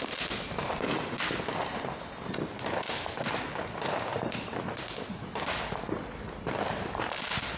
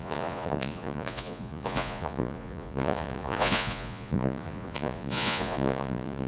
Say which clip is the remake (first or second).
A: second